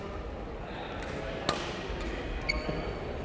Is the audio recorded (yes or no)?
yes